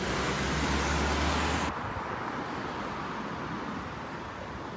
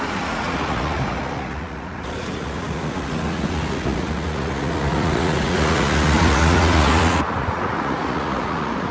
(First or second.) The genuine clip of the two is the first